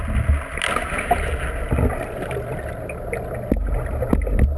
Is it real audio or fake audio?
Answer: real